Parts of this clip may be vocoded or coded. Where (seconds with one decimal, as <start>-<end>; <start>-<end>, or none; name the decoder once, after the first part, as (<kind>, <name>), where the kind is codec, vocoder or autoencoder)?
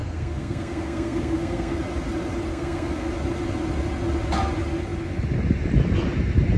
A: 0.0-1.8 (codec, SNAC); 2.5-3.1